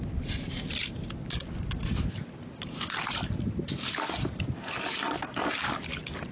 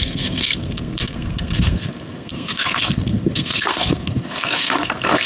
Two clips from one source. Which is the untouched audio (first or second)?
first